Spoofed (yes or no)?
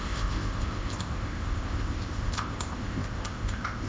yes